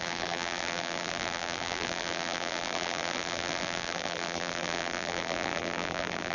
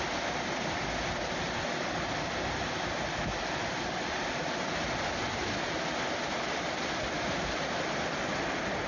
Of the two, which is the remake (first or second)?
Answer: first